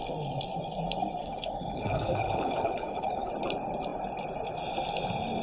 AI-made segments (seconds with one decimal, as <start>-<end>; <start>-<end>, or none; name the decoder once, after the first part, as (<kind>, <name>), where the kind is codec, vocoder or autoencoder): 1.2-3.3 (codec, HILCodec)